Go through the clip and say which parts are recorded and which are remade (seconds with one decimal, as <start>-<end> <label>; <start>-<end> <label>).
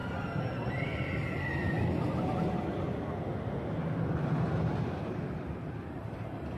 0.0-0.5 recorded; 0.5-3.3 remade; 3.3-6.0 recorded; 6.0-6.6 remade